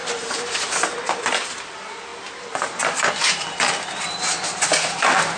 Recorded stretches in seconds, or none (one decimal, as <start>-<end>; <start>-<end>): 1.6-5.4